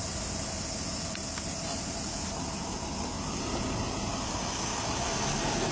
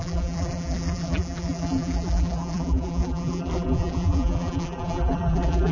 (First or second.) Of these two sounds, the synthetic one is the second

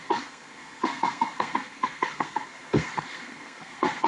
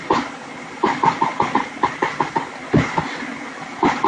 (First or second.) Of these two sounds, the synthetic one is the first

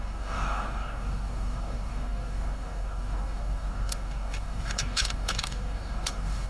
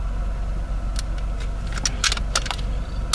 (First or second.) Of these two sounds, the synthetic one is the first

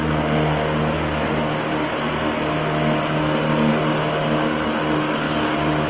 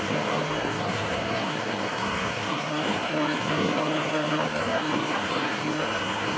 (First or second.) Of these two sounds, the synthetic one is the second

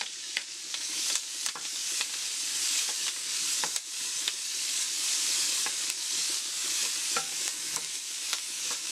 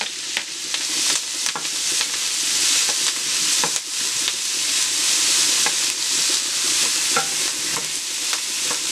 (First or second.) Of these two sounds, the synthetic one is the first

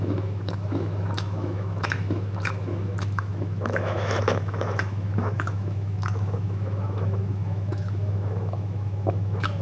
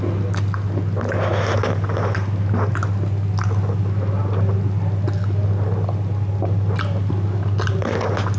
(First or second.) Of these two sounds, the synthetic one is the first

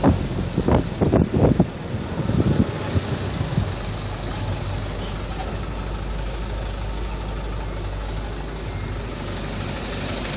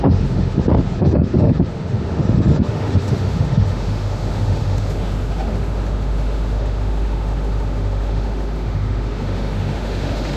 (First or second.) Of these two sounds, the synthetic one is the second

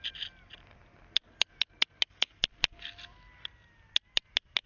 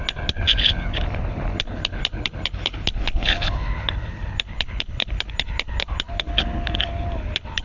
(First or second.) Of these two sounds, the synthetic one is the second